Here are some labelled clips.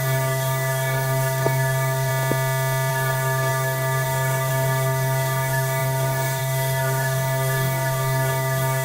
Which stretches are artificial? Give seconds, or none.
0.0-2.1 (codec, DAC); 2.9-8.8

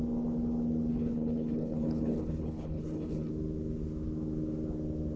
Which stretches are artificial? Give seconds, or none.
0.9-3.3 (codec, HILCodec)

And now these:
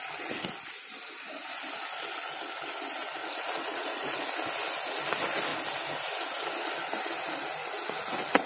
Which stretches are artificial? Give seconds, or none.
3.2-4.2 (vocoder, Vocos); 7.6-8.5

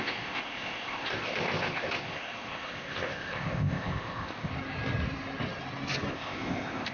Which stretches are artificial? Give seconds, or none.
0.0-4.5 (codec, ZipCodec); 6.1-6.9